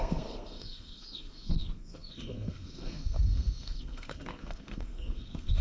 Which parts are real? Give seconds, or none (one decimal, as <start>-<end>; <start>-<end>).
none